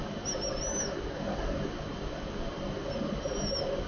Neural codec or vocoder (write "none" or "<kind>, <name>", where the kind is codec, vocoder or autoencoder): none